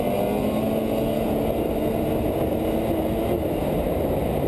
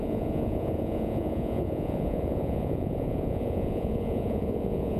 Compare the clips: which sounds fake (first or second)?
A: second